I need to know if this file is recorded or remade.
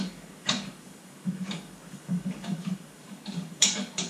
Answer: remade